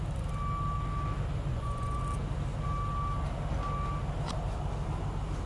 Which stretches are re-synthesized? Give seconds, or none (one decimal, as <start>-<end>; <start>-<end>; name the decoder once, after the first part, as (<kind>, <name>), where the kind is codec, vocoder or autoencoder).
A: 1.5-2.0 (vocoder, Vocos)